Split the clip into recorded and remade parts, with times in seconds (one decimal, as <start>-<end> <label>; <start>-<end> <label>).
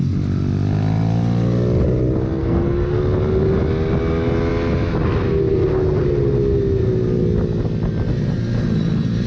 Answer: 0.0-2.4 recorded; 2.4-3.0 remade; 3.0-9.3 recorded